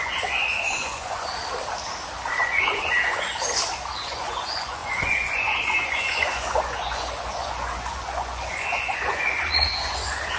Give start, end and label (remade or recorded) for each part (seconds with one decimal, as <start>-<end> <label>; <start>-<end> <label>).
0.0-1.4 remade; 1.4-2.4 recorded; 2.4-3.3 remade; 3.3-3.9 recorded; 3.9-10.4 remade